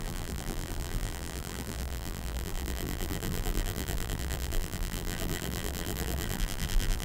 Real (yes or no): no